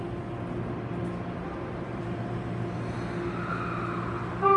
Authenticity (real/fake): real